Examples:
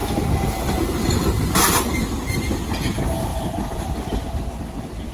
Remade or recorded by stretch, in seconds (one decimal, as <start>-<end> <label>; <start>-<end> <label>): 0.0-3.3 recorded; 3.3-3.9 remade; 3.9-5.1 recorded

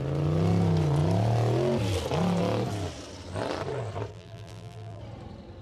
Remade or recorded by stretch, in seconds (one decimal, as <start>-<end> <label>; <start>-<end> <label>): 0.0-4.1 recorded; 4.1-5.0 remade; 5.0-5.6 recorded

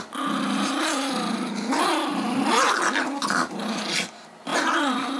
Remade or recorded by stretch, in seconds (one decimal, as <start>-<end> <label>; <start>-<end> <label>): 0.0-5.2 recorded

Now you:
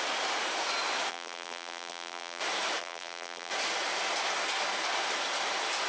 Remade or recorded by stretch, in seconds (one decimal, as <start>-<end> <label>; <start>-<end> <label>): 0.0-1.1 recorded; 1.1-2.4 remade; 2.4-2.8 recorded; 2.8-3.5 remade; 3.5-5.9 recorded

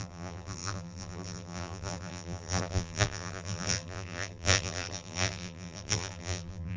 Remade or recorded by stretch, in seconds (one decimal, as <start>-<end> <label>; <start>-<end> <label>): 0.0-6.8 remade

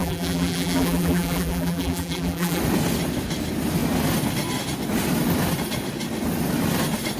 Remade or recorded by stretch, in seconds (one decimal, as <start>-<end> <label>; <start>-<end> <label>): 0.0-2.6 remade; 2.6-7.2 recorded

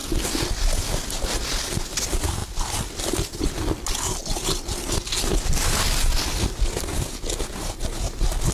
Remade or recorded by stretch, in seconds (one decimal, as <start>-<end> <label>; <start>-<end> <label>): 0.0-0.6 remade; 0.6-2.4 recorded; 2.4-3.0 remade; 3.0-8.5 recorded